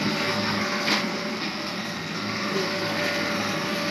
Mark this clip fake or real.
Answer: fake